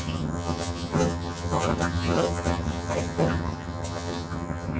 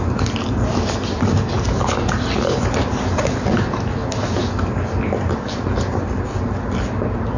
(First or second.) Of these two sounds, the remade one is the first